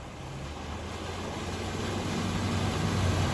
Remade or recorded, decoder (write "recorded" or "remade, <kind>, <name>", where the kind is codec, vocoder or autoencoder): recorded